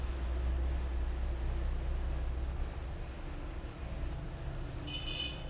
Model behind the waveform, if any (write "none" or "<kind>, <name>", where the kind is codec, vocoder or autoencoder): none